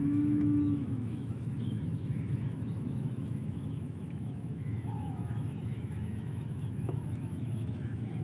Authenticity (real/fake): fake